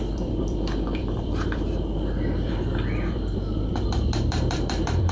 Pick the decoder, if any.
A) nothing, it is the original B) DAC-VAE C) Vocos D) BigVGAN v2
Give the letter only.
D